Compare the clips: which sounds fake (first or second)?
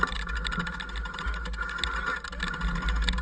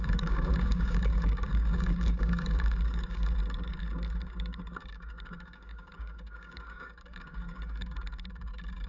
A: second